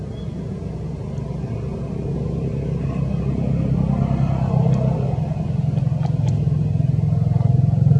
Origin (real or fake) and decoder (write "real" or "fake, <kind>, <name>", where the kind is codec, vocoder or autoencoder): real